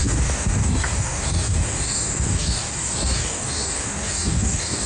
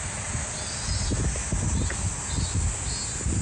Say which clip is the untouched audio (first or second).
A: second